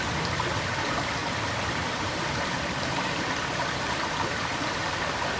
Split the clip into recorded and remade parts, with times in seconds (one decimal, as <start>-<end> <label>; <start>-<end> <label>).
0.0-1.2 recorded; 1.2-4.4 remade; 4.4-5.4 recorded